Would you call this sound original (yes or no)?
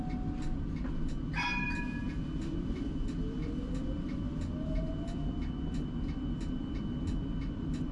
yes